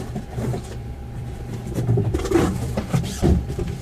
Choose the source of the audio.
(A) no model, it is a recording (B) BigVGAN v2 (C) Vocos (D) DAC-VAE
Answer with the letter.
B